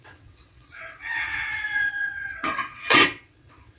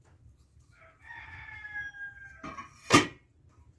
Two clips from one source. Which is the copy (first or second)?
first